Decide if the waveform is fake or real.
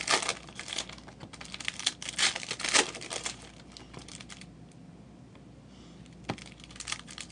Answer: real